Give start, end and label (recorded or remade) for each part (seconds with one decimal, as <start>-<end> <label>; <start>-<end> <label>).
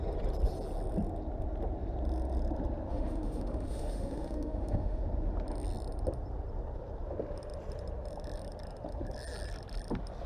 0.0-2.9 recorded; 2.9-5.0 remade; 5.0-10.3 recorded